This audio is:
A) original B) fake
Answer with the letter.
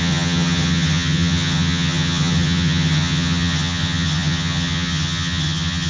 B